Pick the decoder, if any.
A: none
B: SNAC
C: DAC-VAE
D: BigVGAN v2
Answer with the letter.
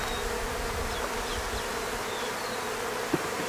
A